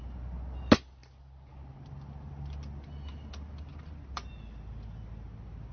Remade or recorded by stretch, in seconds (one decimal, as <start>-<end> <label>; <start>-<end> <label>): 0.0-5.7 recorded